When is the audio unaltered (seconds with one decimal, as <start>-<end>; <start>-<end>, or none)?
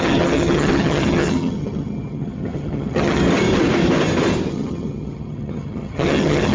3.2-4.5